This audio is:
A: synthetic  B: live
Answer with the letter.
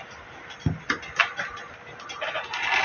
B